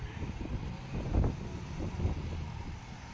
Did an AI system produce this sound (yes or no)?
no